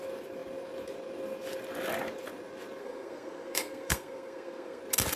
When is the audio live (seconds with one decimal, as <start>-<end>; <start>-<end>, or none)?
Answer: 0.0-2.8; 4.8-5.2